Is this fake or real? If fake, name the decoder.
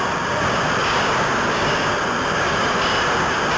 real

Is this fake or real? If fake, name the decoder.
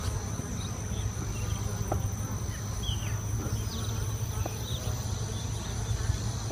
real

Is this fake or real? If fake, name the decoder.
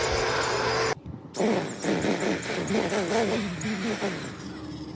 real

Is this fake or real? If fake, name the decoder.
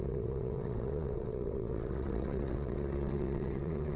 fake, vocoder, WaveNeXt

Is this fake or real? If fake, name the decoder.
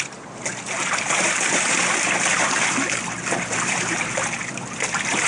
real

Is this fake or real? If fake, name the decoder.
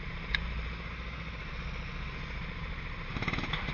real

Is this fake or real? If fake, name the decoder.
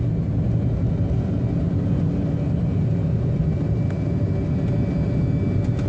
real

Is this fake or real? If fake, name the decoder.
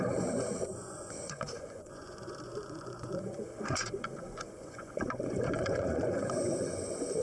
fake, vocoder, Vocos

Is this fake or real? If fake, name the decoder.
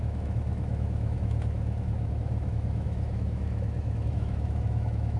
fake, autoencoder, DAC-VAE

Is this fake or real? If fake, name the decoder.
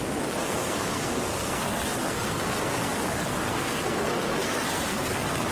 fake, codec, SNAC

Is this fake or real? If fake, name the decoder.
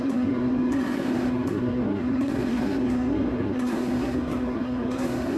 fake, codec, SNAC